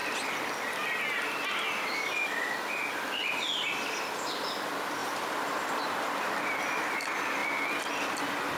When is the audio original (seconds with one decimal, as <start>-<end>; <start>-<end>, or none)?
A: 0.0-2.8